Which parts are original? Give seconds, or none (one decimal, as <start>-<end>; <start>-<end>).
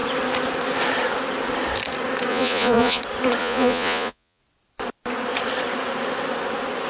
0.0-2.3; 3.0-3.4; 4.4-6.9